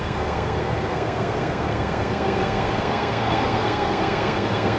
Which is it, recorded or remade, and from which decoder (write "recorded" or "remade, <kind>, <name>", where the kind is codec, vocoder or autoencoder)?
remade, codec, SNAC